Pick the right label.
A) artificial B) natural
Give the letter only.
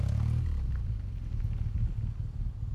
B